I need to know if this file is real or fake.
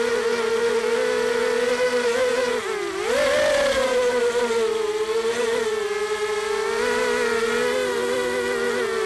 real